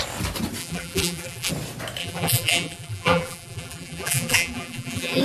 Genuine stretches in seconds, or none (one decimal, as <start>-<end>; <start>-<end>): 0.0-0.6; 1.5-2.0